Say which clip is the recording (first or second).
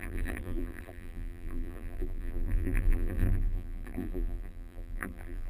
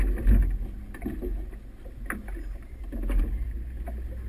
second